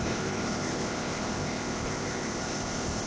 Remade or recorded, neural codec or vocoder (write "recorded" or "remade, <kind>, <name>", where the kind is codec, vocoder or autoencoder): remade, codec, ZipCodec